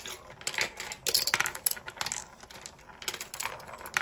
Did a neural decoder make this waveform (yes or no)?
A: no